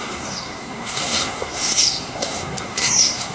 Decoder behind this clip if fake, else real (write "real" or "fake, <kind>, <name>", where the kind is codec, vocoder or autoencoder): fake, codec, SNAC